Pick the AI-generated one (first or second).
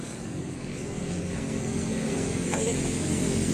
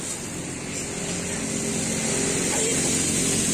first